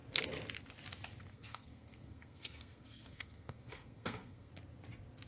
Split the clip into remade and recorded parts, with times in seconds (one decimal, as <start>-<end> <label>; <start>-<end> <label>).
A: 0.0-1.3 recorded; 1.3-4.5 remade; 4.5-5.3 recorded